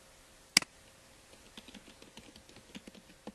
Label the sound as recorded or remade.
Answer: recorded